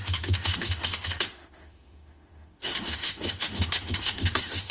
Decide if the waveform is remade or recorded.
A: remade